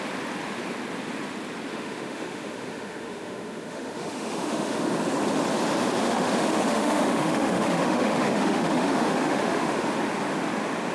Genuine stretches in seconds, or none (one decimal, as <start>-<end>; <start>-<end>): 0.0-1.7; 4.9-6.0; 9.9-10.9